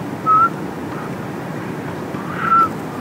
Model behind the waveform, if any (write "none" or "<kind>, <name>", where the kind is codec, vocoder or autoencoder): none